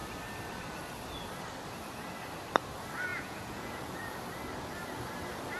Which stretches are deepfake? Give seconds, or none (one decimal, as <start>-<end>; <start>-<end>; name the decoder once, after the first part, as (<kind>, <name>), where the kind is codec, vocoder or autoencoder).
3.1-4.0 (vocoder, Vocos)